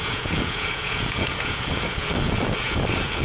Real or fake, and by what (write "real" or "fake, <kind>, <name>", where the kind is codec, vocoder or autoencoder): fake, vocoder, Vocos